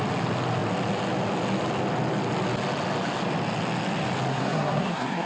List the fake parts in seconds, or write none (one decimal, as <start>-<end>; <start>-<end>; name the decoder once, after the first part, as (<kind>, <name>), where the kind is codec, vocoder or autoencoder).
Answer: 4.3-5.3 (codec, SNAC)